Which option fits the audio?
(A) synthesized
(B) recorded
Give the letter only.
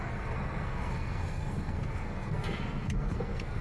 A